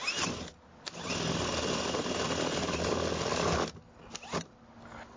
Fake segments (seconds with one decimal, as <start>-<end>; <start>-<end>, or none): none